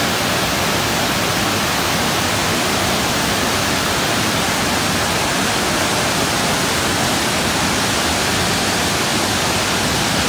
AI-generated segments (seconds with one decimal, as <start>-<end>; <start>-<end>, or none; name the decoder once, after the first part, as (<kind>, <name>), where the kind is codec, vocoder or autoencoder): none